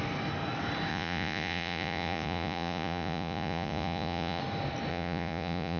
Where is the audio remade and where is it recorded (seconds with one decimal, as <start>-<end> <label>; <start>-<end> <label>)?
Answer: 0.0-0.9 recorded; 0.9-4.4 remade; 4.4-4.9 recorded; 4.9-5.8 remade